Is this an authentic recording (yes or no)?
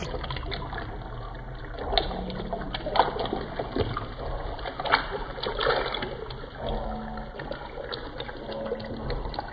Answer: yes